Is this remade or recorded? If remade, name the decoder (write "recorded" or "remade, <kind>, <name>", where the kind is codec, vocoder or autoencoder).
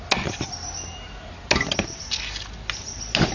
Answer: recorded